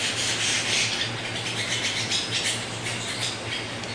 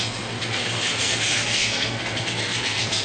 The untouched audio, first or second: first